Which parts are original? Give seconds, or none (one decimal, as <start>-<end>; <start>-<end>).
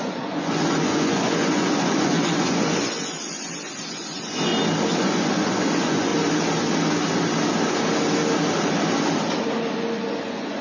4.5-5.0; 6.1-10.1